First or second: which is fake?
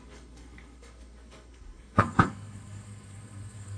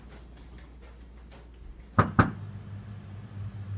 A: first